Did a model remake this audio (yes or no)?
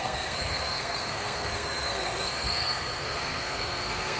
yes